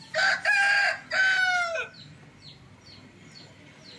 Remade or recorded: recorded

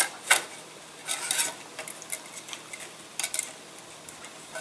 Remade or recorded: recorded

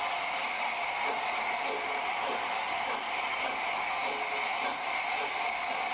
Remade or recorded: recorded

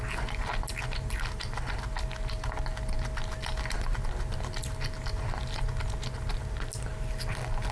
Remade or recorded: recorded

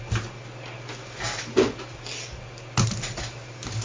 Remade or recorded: recorded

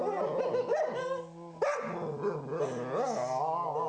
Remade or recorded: recorded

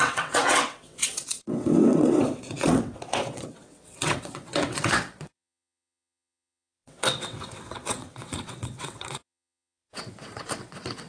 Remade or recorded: remade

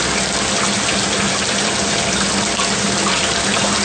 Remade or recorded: recorded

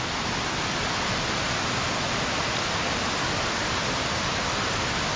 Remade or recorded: recorded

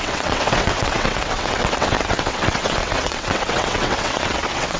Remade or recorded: remade